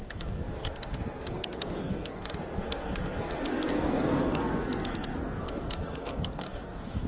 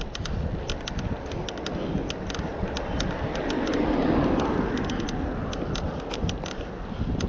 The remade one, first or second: first